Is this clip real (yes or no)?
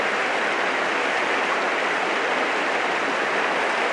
yes